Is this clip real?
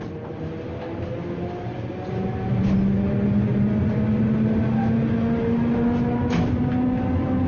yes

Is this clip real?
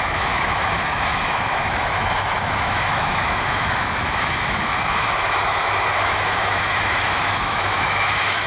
no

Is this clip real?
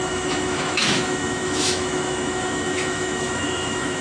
no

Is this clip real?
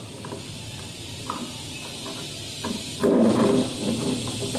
yes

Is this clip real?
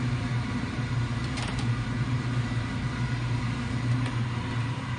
no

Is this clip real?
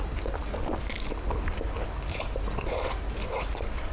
yes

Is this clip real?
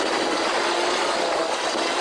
yes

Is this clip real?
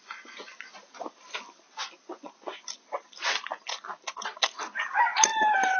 no